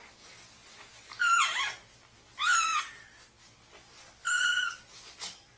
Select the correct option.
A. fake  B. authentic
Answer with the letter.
B